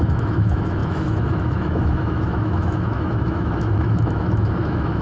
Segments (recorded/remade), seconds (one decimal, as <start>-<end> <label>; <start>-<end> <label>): 0.0-5.0 remade

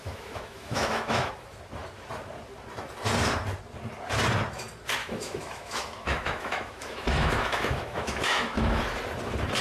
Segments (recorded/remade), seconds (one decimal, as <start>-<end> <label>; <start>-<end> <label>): 0.0-1.3 remade; 1.3-5.0 recorded; 5.0-8.8 remade; 8.8-9.6 recorded

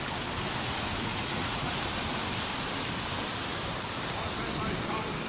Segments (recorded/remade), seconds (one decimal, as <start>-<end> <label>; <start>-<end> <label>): 0.0-1.1 recorded; 1.1-1.8 remade; 1.8-5.3 recorded

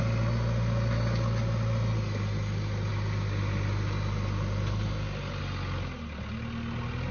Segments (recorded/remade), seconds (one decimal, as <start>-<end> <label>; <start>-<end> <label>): 0.0-7.1 recorded

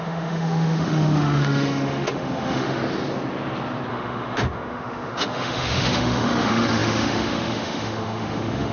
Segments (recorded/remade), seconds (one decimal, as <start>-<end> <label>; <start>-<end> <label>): 0.0-2.8 remade; 2.8-3.9 recorded; 3.9-8.7 remade

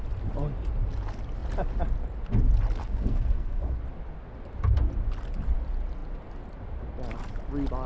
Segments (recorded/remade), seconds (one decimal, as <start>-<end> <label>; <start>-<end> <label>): 0.0-2.8 recorded; 2.8-3.8 remade; 3.8-7.9 recorded

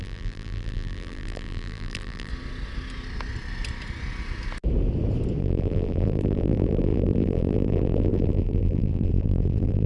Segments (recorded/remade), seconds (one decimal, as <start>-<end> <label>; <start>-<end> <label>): 0.0-2.3 remade; 2.3-5.4 recorded; 5.4-9.9 remade

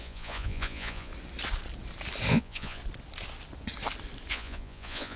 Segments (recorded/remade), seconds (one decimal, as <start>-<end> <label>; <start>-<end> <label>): 0.0-1.1 remade; 1.1-2.3 recorded; 2.3-2.8 remade; 2.8-4.3 recorded; 4.3-5.2 remade